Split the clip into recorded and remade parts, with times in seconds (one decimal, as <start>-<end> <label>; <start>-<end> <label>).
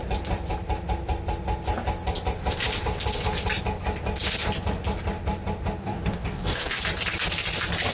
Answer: 0.0-5.8 recorded; 5.8-6.8 remade; 6.8-7.9 recorded